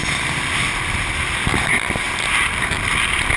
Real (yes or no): yes